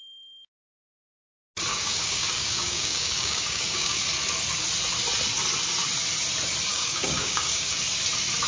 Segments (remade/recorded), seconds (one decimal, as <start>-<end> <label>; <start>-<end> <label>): 0.0-1.7 recorded; 1.7-4.0 remade; 4.0-6.7 recorded; 6.7-7.8 remade; 7.8-8.5 recorded